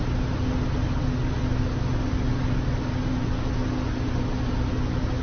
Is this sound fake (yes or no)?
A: no